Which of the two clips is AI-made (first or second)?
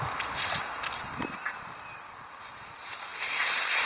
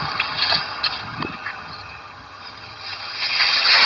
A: second